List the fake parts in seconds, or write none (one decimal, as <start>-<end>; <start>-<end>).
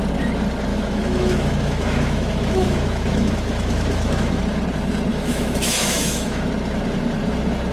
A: 0.7-4.4; 5.1-6.5